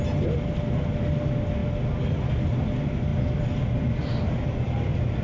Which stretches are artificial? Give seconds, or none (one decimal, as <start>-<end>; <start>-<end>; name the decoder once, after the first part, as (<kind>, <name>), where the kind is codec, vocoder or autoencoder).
none